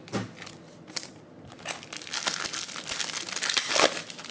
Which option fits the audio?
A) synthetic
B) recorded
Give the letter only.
B